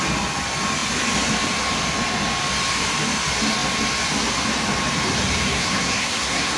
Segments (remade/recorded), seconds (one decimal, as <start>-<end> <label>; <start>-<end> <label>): 0.0-5.5 recorded; 5.5-6.6 remade